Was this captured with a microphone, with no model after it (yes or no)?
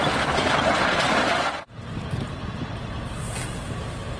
yes